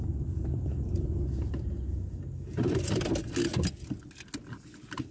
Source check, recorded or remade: recorded